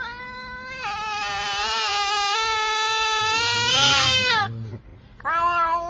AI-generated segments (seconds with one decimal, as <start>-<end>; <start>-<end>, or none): 3.7-4.4